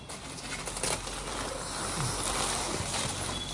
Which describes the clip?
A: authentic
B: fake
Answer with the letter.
A